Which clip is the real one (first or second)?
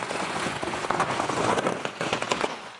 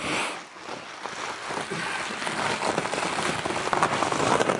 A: second